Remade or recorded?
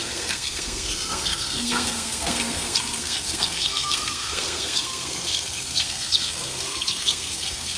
remade